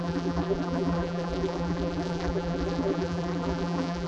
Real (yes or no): no